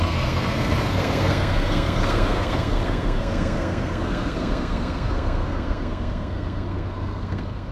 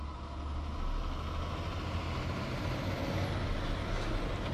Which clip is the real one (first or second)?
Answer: second